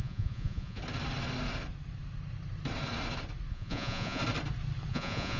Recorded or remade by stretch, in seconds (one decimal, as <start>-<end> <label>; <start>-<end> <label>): 0.0-0.8 remade; 0.8-3.5 recorded; 3.5-4.2 remade; 4.2-4.9 recorded; 4.9-5.4 remade